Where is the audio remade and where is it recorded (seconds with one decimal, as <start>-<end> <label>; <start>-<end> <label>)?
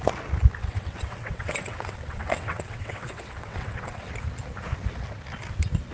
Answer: 0.0-0.6 recorded; 0.6-4.1 remade; 4.1-5.9 recorded